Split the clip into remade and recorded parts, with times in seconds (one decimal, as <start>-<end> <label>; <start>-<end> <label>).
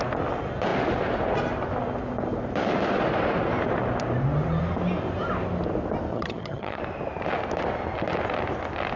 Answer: 0.0-6.1 recorded; 6.1-6.8 remade; 6.8-9.0 recorded